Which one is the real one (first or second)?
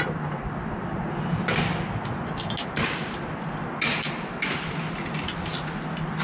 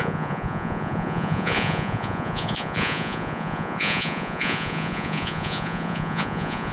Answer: first